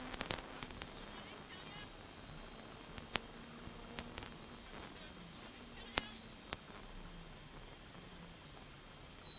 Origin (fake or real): real